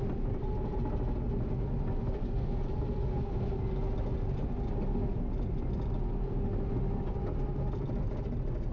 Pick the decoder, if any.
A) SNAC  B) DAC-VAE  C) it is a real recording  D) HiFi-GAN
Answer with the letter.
C